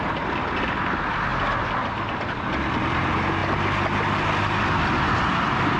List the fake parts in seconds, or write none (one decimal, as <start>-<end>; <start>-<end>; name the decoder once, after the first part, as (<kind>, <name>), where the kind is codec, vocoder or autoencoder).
none